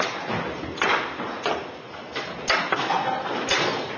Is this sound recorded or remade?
recorded